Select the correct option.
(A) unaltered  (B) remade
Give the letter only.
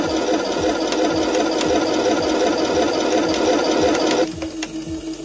A